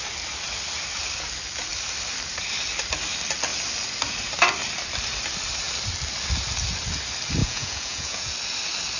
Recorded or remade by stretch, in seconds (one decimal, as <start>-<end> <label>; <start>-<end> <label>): 0.0-7.4 recorded; 7.4-8.3 remade; 8.3-9.0 recorded